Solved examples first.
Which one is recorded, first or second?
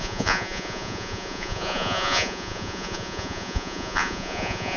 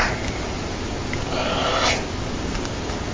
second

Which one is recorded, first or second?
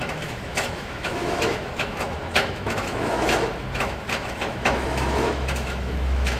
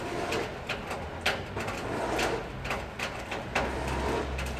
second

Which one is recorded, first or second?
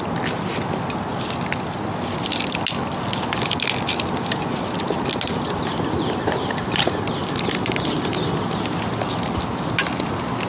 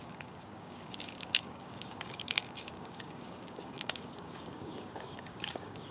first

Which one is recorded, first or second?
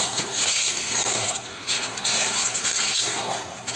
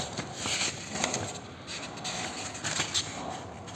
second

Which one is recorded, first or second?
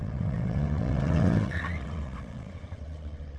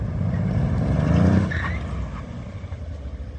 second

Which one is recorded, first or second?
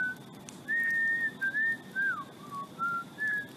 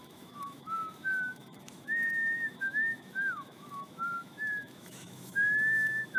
first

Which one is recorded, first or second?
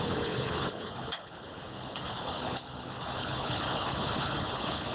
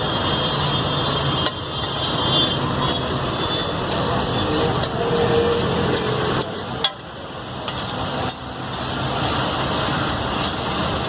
second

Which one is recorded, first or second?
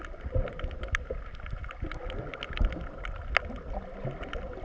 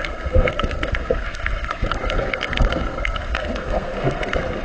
first